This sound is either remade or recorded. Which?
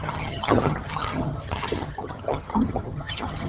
remade